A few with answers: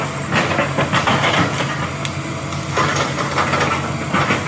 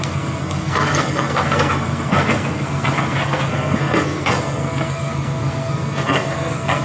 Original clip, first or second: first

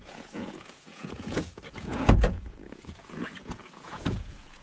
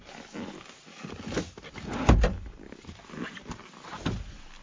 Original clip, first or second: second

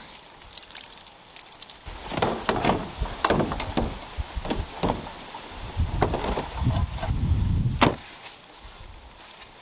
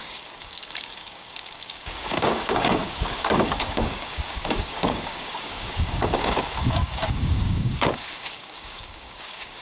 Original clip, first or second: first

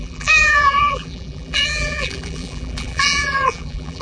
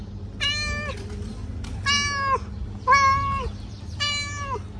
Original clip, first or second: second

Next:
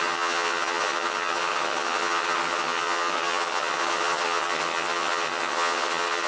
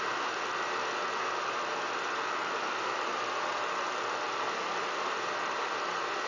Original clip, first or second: second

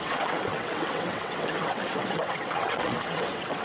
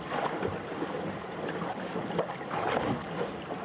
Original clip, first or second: second